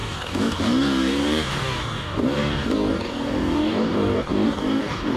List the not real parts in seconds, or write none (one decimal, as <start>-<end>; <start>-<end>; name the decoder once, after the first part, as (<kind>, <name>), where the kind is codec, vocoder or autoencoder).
0.0-5.2 (codec, DAC)